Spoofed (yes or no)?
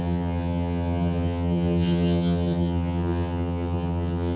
yes